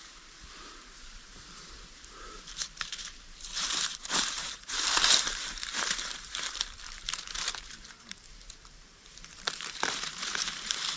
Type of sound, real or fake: fake